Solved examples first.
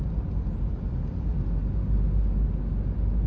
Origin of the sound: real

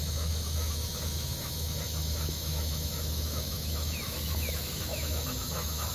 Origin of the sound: fake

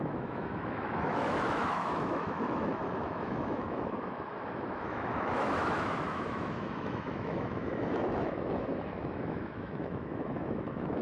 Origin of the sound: fake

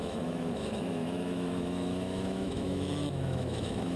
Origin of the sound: fake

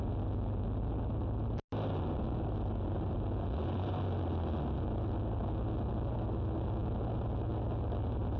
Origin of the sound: real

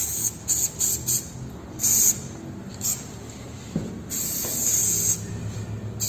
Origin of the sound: real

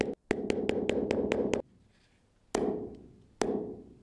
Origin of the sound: real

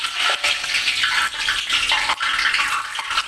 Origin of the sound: real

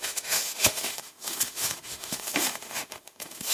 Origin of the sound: fake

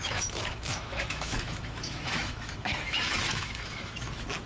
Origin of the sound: fake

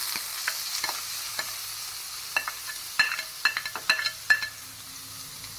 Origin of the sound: real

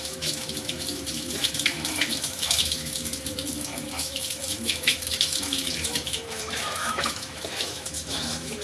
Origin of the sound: fake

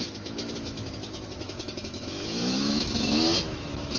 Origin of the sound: fake